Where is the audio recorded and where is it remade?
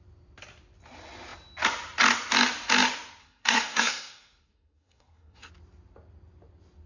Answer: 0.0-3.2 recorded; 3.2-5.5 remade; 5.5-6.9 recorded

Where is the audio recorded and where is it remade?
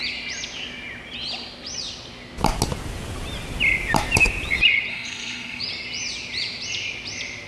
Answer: 0.0-4.9 recorded; 4.9-5.6 remade; 5.6-7.5 recorded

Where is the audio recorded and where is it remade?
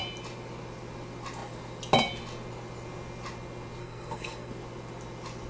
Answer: 0.0-3.8 recorded; 3.8-4.5 remade; 4.5-5.5 recorded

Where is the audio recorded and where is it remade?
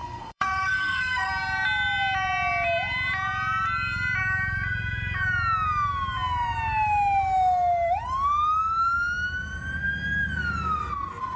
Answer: 0.0-1.3 remade; 1.3-11.4 recorded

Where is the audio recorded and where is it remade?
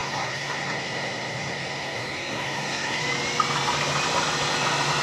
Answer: 0.0-3.0 remade; 3.0-5.0 recorded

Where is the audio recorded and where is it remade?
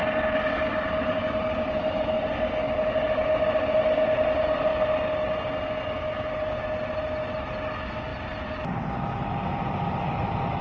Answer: 0.0-10.6 recorded